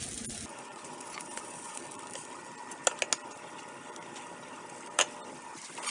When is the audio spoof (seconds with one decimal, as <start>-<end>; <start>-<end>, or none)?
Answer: 0.5-1.8